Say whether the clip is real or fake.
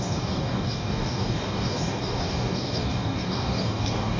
fake